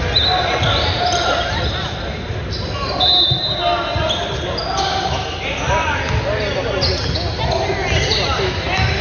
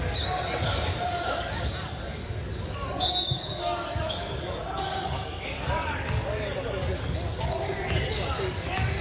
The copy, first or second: second